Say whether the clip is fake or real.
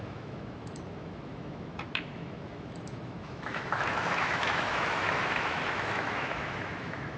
fake